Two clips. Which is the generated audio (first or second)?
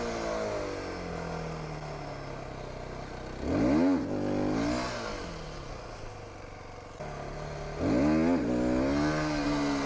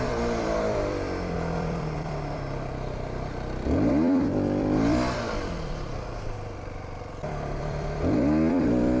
second